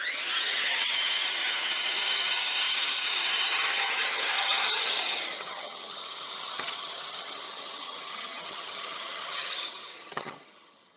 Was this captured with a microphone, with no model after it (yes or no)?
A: no